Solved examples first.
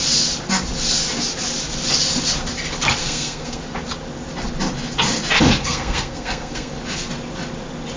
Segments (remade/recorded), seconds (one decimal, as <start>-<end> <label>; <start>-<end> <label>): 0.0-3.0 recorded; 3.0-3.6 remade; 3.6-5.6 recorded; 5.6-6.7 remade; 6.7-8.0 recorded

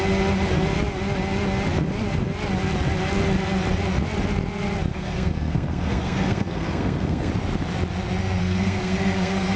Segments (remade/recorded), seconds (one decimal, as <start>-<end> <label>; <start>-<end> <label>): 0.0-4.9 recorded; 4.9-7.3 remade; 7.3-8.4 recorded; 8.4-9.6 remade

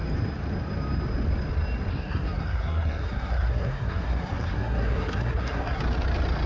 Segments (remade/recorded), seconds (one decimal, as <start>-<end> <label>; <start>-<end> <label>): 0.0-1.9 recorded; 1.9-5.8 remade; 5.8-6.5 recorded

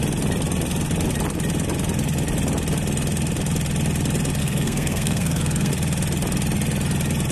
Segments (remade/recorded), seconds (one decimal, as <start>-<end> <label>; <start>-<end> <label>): 0.0-4.4 recorded; 4.4-5.7 remade; 5.7-7.3 recorded

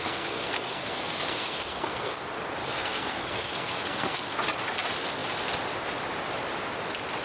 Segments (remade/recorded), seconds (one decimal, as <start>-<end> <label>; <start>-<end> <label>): 0.0-2.2 remade; 2.2-2.6 recorded; 2.6-4.2 remade; 4.2-7.2 recorded